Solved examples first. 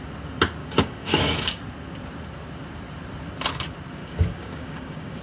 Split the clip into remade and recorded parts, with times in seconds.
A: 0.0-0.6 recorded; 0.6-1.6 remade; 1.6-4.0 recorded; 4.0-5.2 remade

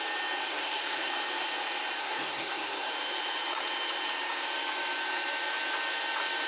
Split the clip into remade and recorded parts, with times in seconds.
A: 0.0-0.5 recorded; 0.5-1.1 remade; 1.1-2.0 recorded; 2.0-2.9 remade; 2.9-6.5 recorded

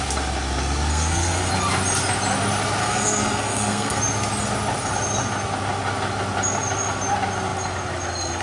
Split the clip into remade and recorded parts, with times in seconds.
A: 0.0-0.9 recorded; 0.9-1.5 remade; 1.5-2.8 recorded; 2.8-4.0 remade; 4.0-8.4 recorded

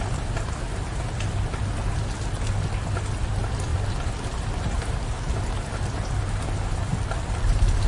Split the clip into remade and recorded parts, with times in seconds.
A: 0.0-7.9 recorded

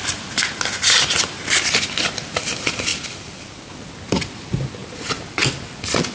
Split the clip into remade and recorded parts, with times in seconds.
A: 0.0-0.9 remade; 0.9-2.9 recorded; 2.9-3.7 remade; 3.7-6.1 recorded

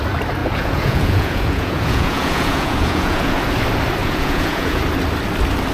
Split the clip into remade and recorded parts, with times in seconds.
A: 0.0-0.4 recorded; 0.4-3.4 remade; 3.4-4.0 recorded; 4.0-4.8 remade; 4.8-5.7 recorded

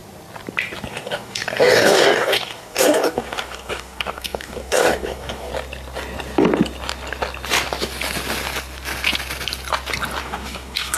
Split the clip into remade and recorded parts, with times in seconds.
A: 0.0-0.9 recorded; 0.9-5.5 remade; 5.5-10.2 recorded; 10.2-11.0 remade